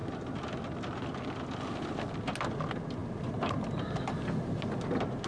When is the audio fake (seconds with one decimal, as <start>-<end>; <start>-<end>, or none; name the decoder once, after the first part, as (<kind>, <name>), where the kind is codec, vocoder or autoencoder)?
none